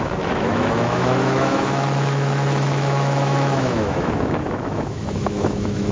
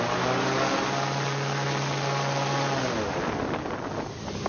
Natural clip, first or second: second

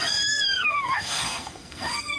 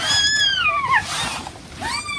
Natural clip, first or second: second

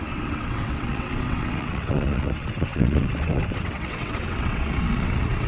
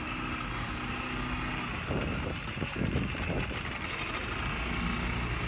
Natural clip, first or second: second